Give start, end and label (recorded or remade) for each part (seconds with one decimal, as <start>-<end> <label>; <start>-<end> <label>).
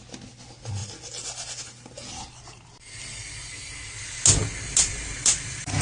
0.0-5.8 recorded